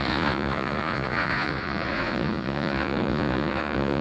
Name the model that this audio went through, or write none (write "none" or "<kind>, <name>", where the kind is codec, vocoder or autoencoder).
vocoder, Vocos